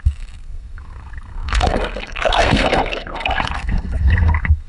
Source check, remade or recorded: remade